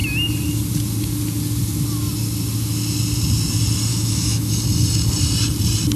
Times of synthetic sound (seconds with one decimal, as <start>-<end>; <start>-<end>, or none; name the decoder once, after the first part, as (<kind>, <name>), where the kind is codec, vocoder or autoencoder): 3.9-4.5 (autoencoder, DAC-VAE)